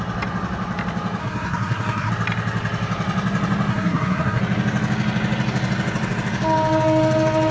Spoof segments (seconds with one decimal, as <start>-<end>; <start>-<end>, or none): 1.2-2.1; 3.7-4.4